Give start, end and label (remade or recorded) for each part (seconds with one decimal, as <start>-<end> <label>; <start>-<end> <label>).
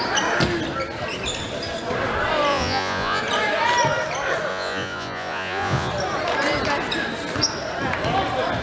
0.0-2.5 recorded; 2.5-3.2 remade; 3.2-4.5 recorded; 4.5-5.9 remade; 5.9-8.6 recorded